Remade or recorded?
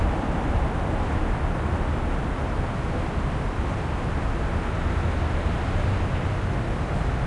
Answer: recorded